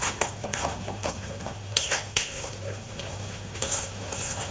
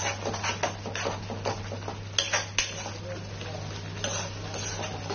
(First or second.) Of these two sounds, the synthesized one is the first